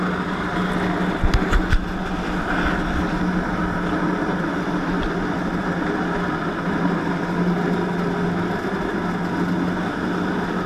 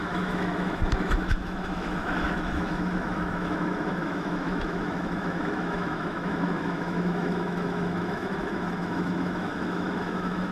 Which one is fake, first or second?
second